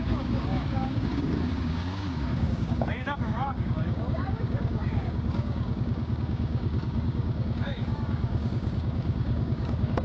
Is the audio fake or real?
fake